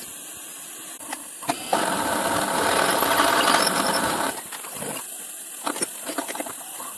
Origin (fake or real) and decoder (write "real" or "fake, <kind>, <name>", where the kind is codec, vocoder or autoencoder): fake, vocoder, BigVGAN v2